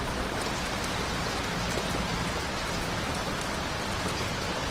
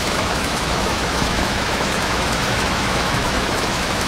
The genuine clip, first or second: first